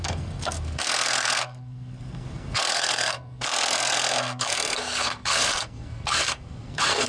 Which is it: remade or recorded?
remade